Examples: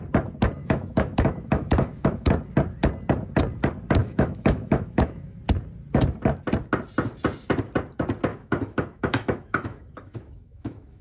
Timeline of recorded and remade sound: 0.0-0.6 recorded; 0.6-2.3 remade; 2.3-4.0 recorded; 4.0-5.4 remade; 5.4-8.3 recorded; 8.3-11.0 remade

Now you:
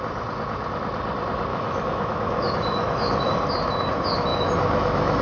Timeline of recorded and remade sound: 0.0-1.5 recorded; 1.5-3.3 remade; 3.3-4.3 recorded; 4.3-5.2 remade